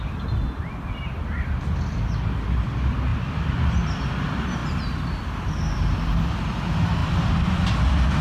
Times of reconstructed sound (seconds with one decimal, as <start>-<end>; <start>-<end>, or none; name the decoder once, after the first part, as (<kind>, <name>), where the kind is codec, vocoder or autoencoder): 3.1-4.1 (vocoder, BigVGAN v2); 7.0-8.2